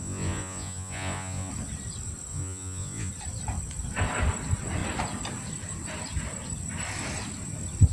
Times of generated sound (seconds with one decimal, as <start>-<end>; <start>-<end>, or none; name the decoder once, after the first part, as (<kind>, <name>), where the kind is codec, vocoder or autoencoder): 0.0-1.5 (vocoder, Vocos); 2.3-3.1